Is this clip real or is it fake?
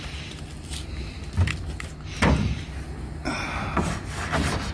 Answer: real